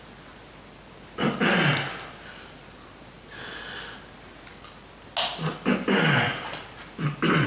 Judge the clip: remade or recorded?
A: recorded